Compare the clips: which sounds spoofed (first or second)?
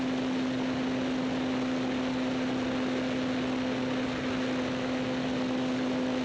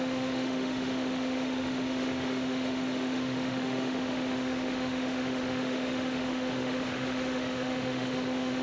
second